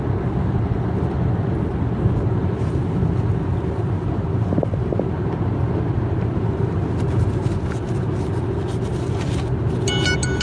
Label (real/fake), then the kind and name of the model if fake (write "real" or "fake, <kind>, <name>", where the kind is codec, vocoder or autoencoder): real